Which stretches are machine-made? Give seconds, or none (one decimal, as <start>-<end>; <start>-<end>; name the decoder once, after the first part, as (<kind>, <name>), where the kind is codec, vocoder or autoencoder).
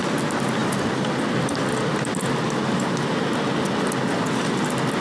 none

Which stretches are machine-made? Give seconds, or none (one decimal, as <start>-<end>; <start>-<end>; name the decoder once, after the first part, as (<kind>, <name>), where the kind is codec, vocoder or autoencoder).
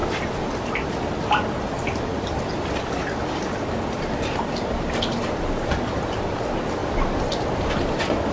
none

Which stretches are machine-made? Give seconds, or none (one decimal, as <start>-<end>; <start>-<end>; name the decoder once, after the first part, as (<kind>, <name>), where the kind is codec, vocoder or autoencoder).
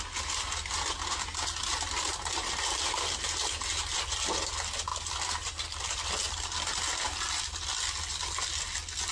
none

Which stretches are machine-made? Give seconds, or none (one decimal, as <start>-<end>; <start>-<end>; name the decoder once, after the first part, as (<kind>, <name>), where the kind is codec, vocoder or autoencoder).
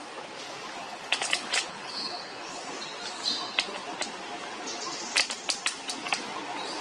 0.8-2.6 (codec, HILCodec)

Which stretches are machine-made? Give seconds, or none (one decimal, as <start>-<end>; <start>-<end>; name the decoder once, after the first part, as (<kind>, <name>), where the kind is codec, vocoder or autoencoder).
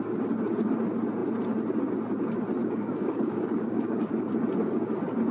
2.6-4.1 (codec, DAC)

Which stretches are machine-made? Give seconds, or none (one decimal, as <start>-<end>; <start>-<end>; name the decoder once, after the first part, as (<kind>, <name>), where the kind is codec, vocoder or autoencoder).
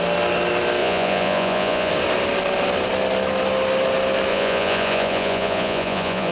0.8-1.9 (vocoder, Vocos); 4.3-6.3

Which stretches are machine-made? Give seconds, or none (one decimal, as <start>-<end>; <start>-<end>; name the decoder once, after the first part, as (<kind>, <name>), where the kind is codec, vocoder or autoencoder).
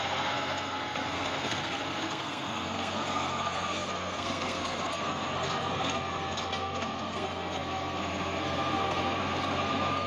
0.0-10.1 (codec, SNAC)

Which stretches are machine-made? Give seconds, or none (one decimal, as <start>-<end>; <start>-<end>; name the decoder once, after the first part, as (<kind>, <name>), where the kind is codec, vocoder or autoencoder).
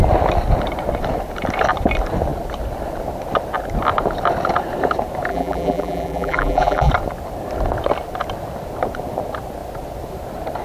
5.3-6.9 (vocoder, BigVGAN v2)